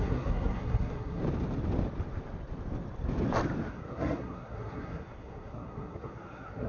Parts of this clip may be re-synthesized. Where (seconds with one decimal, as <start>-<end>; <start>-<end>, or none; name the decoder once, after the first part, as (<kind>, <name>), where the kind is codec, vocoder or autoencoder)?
0.0-1.2 (codec, SNAC); 3.7-6.7